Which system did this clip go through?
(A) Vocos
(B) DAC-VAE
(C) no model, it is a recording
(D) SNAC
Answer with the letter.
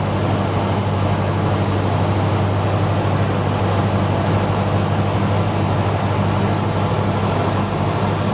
C